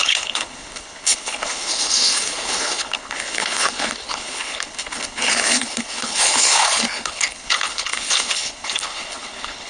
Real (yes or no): no